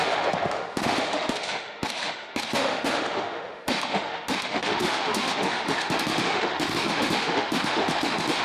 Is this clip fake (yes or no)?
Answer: yes